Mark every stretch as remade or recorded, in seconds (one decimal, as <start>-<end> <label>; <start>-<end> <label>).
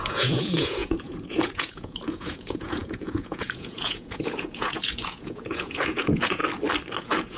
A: 0.0-6.4 remade; 6.4-7.0 recorded; 7.0-7.4 remade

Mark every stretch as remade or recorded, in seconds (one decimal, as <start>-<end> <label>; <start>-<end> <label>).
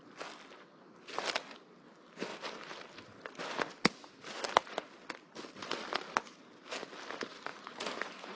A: 0.0-7.5 recorded; 7.5-8.4 remade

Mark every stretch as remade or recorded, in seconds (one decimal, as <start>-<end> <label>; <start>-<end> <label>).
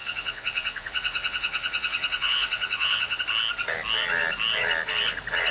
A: 0.0-3.2 remade; 3.2-5.5 recorded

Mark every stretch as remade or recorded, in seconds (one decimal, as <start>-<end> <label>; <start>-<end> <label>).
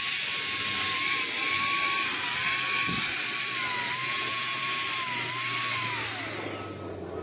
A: 0.0-4.0 recorded; 4.0-4.6 remade; 4.6-7.2 recorded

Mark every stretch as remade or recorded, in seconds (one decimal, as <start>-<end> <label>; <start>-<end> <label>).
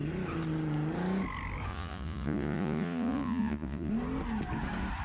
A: 0.0-1.7 recorded; 1.7-3.9 remade; 3.9-5.0 recorded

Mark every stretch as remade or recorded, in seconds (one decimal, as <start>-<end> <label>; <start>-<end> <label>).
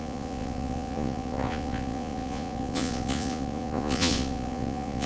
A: 0.0-5.1 remade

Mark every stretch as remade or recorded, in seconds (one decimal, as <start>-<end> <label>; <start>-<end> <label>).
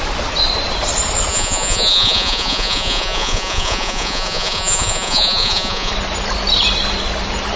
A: 0.0-1.3 recorded; 1.3-5.9 remade; 5.9-7.6 recorded